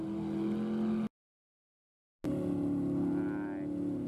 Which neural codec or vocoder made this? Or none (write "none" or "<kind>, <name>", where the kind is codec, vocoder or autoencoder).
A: none